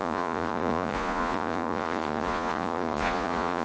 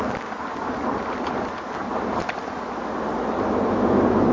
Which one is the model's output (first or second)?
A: first